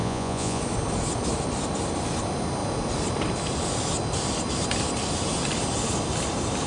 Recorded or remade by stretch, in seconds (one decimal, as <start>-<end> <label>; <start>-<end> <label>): 0.0-0.6 remade; 0.6-6.7 recorded